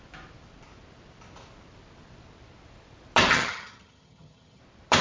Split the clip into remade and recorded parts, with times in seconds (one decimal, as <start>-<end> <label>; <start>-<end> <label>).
0.0-3.3 recorded; 3.3-4.6 remade; 4.6-5.0 recorded